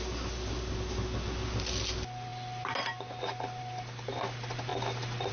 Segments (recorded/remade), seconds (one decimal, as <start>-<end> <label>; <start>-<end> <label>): 0.0-5.3 recorded